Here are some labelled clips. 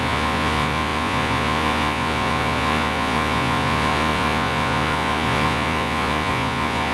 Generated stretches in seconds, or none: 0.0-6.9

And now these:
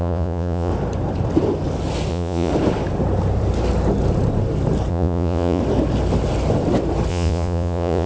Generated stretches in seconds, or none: 0.0-0.7; 2.1-2.5; 4.9-5.6; 7.1-8.1

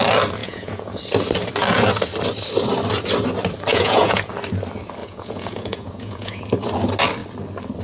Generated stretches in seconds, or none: 0.4-1.0; 3.7-4.3; 5.0-6.4

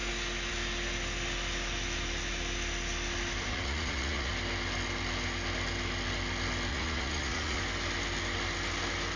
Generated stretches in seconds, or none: 3.5-4.3; 6.7-7.6

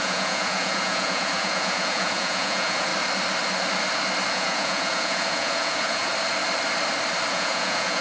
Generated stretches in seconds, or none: 0.0-2.9; 4.3-6.1; 7.3-8.0

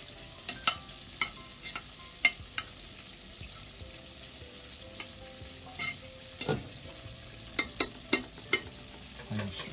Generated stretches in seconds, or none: 6.5-7.3

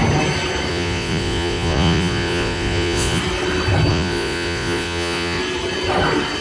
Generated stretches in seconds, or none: 0.7-3.2; 3.9-5.4

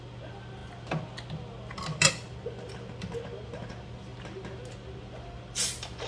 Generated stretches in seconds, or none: none